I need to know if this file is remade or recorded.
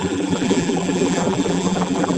remade